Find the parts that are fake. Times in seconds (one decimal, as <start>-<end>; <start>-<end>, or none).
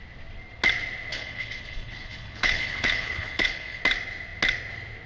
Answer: 1.1-3.8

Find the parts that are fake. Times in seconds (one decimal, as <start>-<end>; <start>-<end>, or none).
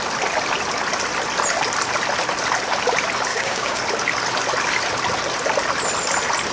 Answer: 3.3-3.8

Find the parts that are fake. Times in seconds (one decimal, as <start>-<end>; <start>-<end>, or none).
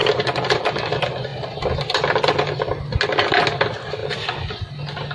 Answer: none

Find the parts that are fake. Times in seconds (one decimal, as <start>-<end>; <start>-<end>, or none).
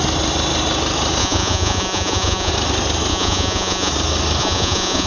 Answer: 1.2-2.5; 3.1-3.9; 4.4-5.1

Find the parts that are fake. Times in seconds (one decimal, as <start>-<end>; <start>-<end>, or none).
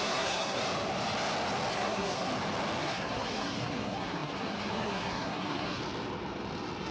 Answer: 0.0-0.6; 1.7-2.3; 2.8-5.8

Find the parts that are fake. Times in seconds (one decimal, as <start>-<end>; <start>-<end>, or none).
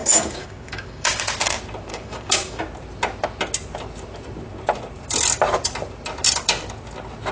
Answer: 0.0-1.2; 1.9-2.6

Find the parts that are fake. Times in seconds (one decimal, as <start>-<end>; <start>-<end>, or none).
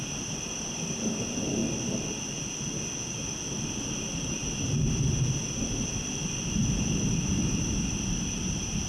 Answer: 0.0-1.6; 3.7-4.4; 6.6-8.9